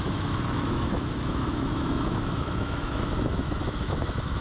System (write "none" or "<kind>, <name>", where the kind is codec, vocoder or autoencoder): autoencoder, DAC-VAE